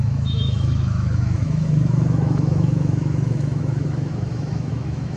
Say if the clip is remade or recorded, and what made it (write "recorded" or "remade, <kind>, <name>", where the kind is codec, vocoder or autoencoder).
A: remade, autoencoder, DAC-VAE